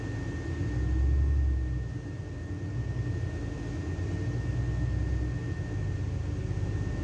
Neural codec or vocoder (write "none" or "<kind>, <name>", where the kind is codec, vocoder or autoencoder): none